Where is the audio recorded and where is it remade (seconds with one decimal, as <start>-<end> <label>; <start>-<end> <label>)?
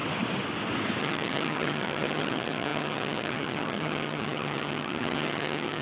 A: 0.0-1.0 recorded; 1.0-5.8 remade